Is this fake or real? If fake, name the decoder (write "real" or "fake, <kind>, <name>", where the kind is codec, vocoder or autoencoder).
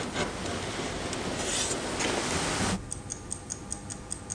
real